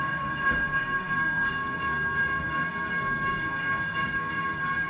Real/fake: fake